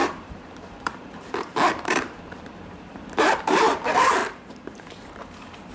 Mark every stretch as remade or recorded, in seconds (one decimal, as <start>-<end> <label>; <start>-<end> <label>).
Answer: 0.0-5.7 remade